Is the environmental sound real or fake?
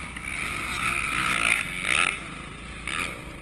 real